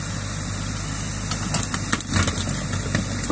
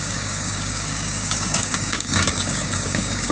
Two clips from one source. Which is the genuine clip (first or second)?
first